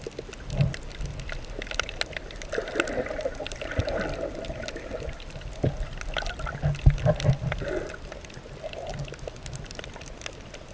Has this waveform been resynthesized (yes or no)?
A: no